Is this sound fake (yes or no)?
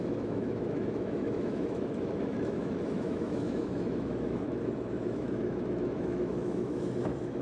yes